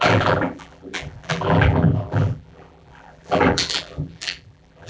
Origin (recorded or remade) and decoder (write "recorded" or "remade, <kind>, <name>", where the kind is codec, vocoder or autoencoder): remade, vocoder, BigVGAN v2